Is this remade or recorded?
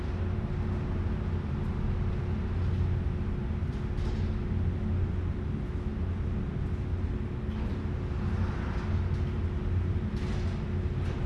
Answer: recorded